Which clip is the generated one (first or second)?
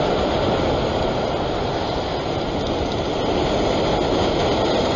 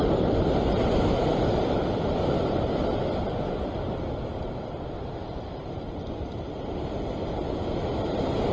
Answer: second